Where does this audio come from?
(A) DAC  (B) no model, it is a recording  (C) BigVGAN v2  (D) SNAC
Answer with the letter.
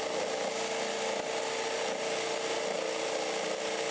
B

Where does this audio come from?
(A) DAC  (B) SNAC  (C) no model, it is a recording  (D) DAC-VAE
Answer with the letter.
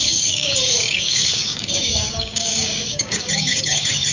A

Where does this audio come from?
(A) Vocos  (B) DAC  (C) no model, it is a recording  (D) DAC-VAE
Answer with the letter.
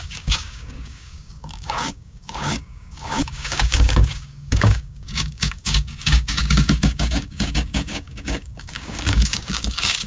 B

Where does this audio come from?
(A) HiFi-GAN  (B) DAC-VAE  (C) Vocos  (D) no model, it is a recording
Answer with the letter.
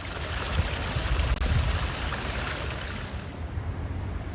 D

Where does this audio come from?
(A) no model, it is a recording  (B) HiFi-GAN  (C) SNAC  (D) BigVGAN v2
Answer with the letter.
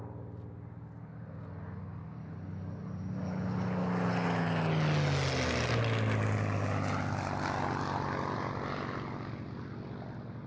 A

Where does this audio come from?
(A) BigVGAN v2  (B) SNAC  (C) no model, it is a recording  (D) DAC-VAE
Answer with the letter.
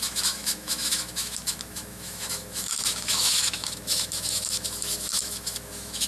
D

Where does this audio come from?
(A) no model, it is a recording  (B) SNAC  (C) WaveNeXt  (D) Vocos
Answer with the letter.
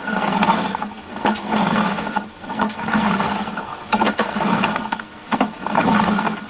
B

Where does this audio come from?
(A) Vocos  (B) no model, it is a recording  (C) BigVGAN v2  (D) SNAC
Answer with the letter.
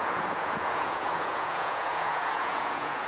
A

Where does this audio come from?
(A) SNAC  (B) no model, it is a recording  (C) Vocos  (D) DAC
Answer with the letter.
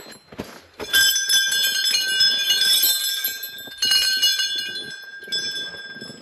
B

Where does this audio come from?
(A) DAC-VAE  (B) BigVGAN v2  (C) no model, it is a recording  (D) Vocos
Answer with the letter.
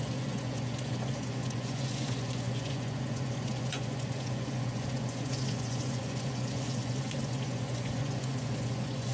D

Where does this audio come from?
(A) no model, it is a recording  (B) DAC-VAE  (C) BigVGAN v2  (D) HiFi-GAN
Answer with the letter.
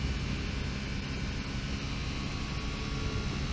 A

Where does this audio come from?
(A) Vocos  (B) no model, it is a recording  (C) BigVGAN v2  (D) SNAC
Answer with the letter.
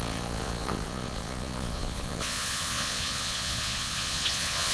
A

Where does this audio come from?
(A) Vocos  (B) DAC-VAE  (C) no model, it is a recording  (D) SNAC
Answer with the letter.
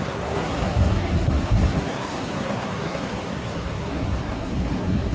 D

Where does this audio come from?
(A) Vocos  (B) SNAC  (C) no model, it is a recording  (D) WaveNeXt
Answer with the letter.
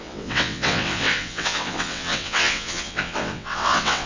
D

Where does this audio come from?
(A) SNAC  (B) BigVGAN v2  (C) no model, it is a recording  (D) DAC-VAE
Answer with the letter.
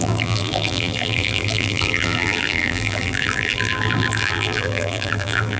B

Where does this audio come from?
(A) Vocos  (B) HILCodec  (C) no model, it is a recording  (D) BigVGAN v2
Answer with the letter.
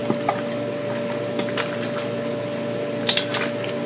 C